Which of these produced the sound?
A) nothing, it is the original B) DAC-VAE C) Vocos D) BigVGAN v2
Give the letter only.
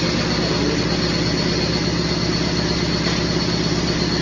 A